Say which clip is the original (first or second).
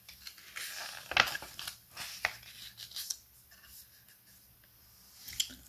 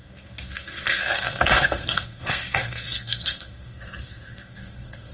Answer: first